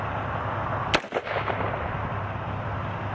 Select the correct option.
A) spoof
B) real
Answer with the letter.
B